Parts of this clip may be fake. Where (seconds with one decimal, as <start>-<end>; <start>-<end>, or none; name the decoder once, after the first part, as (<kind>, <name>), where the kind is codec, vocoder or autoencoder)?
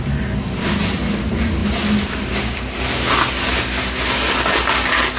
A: none